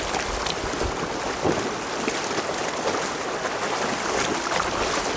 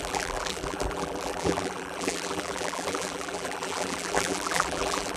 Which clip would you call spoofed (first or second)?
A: second